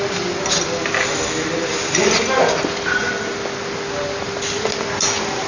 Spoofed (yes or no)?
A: no